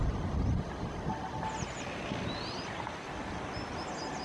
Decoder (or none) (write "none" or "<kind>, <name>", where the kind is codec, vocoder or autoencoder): none